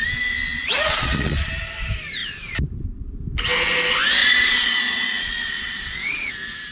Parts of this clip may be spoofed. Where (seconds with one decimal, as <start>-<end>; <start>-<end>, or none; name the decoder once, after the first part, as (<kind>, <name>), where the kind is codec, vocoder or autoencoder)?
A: 0.5-1.5 (vocoder, Vocos); 4.2-6.3